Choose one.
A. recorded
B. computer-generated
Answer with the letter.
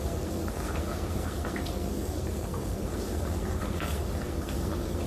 B